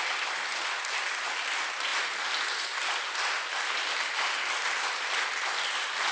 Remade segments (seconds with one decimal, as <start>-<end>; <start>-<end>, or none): none